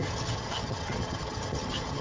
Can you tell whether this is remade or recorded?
remade